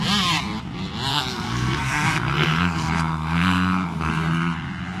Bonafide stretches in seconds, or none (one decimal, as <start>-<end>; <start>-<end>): 0.0-1.1; 4.1-5.0